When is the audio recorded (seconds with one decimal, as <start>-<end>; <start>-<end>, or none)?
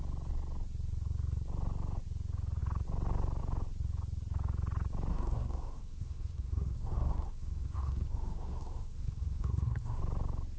0.0-5.1; 10.0-10.6